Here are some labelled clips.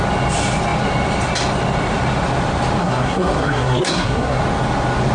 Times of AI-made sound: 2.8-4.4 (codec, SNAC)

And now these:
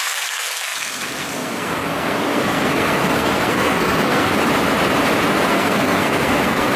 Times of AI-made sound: 0.0-4.4 (codec, SNAC); 5.5-6.8